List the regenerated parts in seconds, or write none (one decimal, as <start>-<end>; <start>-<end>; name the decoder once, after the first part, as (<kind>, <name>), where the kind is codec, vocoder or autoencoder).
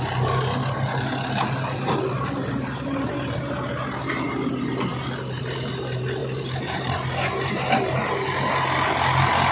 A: 6.2-6.9 (vocoder, BigVGAN v2)